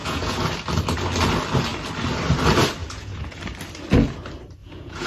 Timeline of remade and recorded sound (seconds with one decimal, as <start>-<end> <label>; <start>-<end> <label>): 0.0-0.5 remade; 0.5-2.8 recorded; 2.8-3.4 remade; 3.4-4.6 recorded; 4.6-5.1 remade